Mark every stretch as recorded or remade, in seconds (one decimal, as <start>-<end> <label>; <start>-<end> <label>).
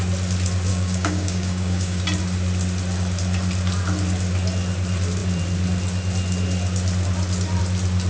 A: 0.0-0.7 recorded; 0.7-2.0 remade; 2.0-8.1 recorded